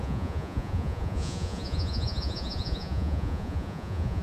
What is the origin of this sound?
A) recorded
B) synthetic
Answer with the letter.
B